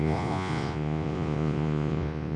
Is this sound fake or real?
fake